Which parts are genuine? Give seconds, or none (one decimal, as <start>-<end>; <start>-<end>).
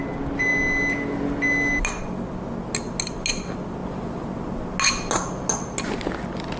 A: 0.0-6.6